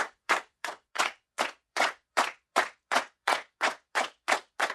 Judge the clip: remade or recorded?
remade